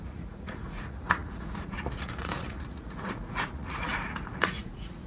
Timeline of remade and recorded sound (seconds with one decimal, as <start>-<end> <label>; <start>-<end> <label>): 0.0-5.1 remade